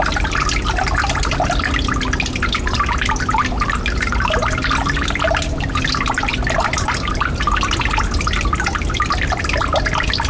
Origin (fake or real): real